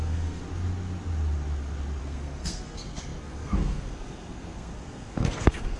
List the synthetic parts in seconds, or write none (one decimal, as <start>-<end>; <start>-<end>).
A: 0.0-0.4; 2.0-5.8